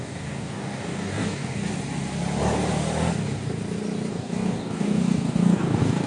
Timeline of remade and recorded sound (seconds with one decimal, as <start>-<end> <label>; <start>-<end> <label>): 0.0-1.6 remade; 1.6-4.1 recorded; 4.1-6.1 remade